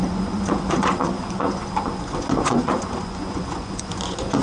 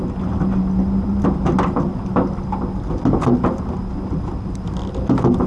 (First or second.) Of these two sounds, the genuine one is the second